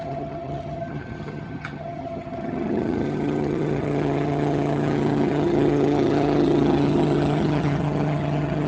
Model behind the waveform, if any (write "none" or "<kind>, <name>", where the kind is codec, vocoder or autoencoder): vocoder, HiFi-GAN